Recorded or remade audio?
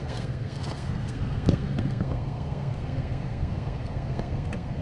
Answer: remade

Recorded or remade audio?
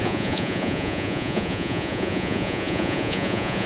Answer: remade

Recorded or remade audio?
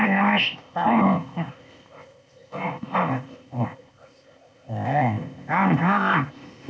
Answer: remade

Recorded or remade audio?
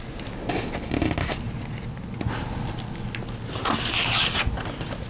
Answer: recorded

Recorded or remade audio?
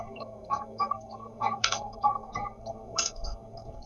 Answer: remade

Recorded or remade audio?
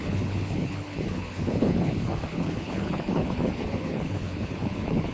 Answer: remade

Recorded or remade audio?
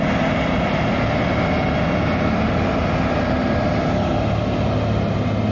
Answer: recorded